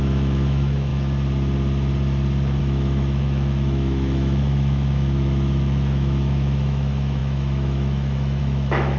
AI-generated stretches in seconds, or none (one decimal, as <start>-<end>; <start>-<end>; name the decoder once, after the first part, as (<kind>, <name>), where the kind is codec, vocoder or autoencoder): 0.0-0.9 (autoencoder, DAC-VAE); 2.6-9.0